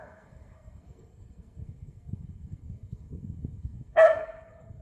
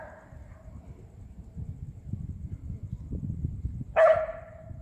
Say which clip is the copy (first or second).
first